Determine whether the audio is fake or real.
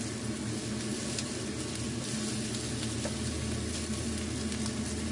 real